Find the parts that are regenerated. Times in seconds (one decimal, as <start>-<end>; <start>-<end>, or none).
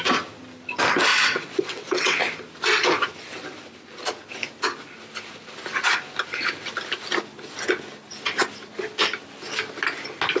1.1-2.2